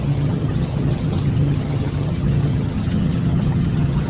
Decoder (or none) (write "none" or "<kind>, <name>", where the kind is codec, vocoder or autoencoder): vocoder, HiFi-GAN